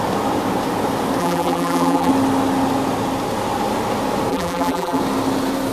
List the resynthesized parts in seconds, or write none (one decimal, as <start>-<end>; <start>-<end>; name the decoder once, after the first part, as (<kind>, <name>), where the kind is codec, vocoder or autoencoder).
1.2-2.1 (vocoder, BigVGAN v2); 4.3-5.0